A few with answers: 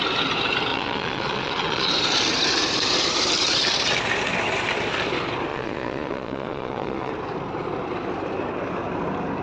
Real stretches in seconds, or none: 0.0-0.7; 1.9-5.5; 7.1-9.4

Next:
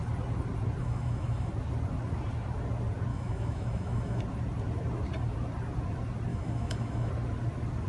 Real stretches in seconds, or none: 0.0-0.8; 1.5-3.1; 4.2-6.3; 7.1-7.9

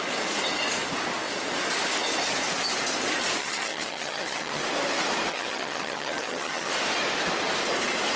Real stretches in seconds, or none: 0.0-3.4; 4.6-5.3; 6.7-8.2

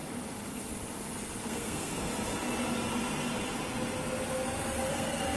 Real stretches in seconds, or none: 0.0-1.4; 2.1-4.7

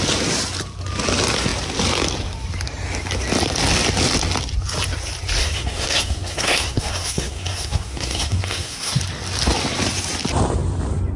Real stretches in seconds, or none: 0.0-5.4; 9.0-11.2

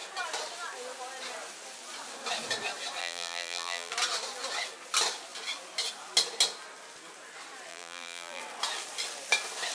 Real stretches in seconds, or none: 0.0-3.0; 3.9-7.7; 8.4-9.7

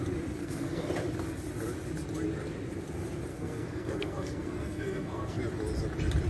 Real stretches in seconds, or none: 0.0-0.4; 0.9-3.3; 5.4-6.3